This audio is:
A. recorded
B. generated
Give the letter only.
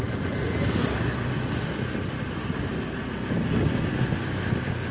A